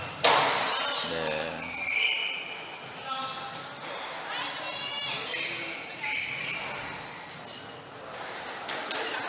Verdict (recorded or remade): recorded